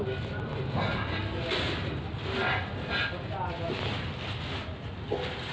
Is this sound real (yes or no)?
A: yes